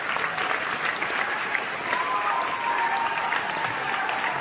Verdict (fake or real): real